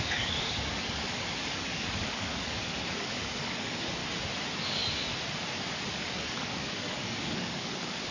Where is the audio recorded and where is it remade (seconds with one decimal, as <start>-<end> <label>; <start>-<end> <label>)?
0.0-4.0 remade; 4.0-5.9 recorded; 5.9-8.1 remade